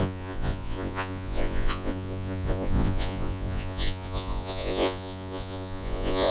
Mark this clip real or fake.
fake